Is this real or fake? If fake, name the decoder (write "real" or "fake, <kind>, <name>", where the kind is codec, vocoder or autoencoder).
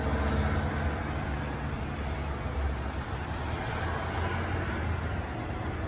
real